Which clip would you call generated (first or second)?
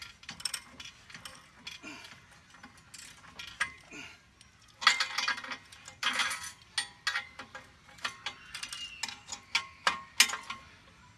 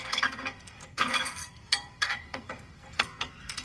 second